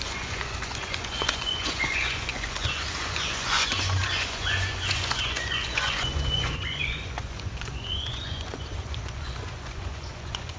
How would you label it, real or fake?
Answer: fake